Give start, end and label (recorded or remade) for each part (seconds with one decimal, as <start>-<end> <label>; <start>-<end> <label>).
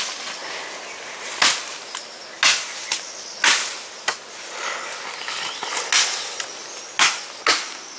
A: 0.0-8.0 recorded